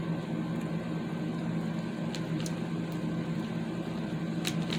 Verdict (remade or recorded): recorded